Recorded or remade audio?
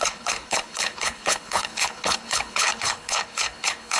remade